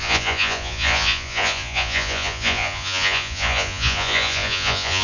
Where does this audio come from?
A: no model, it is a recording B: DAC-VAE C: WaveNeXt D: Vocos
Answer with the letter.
D